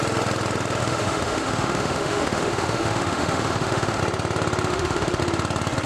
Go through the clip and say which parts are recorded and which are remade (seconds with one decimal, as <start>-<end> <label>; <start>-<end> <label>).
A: 0.0-0.8 recorded; 0.8-4.0 remade; 4.0-4.7 recorded; 4.7-5.2 remade; 5.2-5.9 recorded